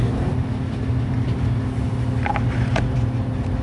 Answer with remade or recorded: recorded